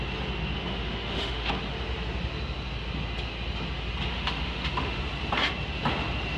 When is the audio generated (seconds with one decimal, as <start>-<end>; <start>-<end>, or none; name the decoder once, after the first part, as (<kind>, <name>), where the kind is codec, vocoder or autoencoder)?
0.7-1.5 (autoencoder, DAC-VAE); 4.1-5.0